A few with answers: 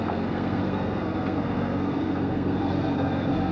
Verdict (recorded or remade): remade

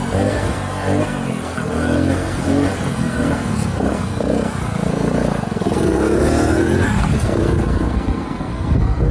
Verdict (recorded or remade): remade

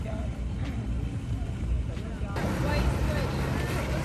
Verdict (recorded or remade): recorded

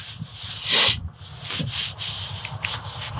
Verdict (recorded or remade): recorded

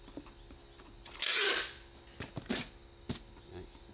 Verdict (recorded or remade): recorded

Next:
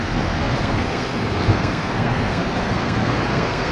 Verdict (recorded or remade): remade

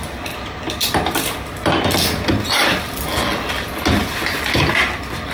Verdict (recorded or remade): recorded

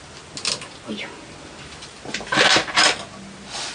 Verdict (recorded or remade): recorded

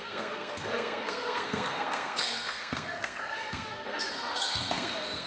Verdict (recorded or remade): remade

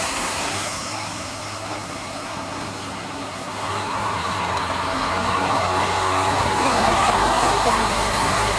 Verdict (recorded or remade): remade